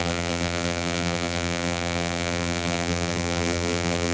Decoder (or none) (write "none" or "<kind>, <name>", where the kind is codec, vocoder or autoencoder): vocoder, BigVGAN v2